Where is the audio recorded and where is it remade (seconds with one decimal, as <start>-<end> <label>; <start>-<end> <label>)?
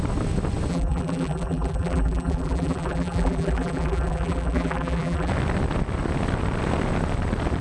0.0-0.7 recorded; 0.7-5.3 remade; 5.3-7.6 recorded